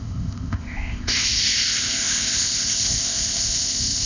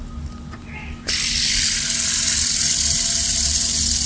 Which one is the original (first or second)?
second